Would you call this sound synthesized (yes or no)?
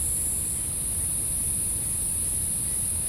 no